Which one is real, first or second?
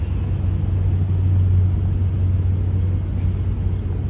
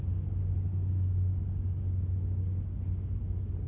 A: first